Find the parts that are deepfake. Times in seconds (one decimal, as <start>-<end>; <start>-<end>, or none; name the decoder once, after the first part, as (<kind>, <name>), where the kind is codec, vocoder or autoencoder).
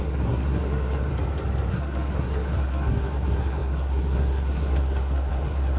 0.0-1.1 (codec, SNAC); 1.7-5.8